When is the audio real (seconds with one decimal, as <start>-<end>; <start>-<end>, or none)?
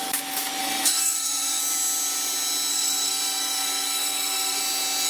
0.0-0.6; 1.6-2.7; 4.6-5.1